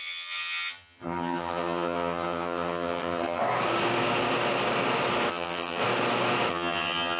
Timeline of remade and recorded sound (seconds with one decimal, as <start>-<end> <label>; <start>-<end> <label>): 0.0-3.4 remade; 3.4-5.3 recorded; 5.3-5.8 remade; 5.8-6.5 recorded; 6.5-7.2 remade